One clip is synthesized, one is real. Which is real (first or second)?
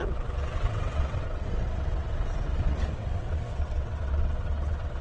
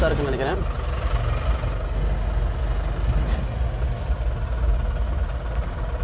second